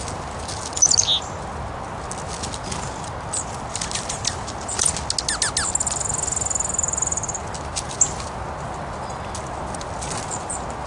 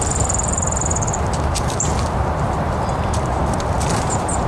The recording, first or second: first